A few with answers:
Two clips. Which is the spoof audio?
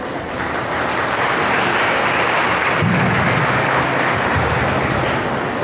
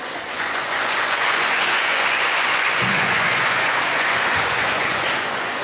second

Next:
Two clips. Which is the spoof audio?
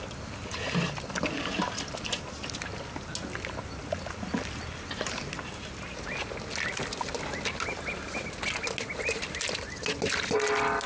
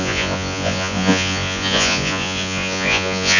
second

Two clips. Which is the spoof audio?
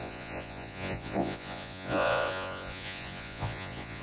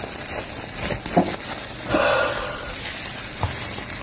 first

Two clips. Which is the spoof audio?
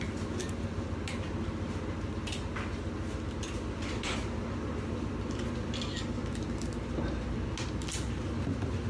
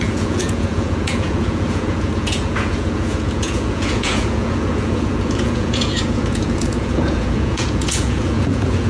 second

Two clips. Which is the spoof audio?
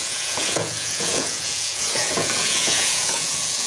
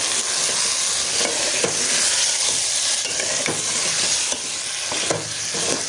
first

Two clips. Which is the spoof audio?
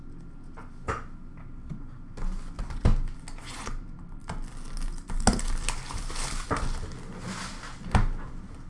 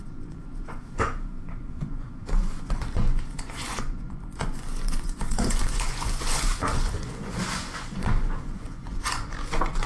second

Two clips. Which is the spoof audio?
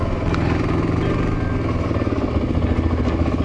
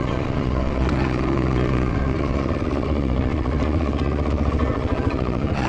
second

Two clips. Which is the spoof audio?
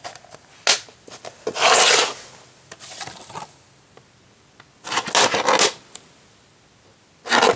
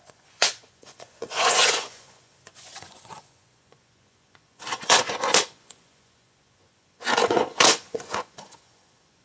second